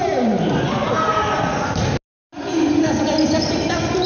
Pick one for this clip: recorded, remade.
recorded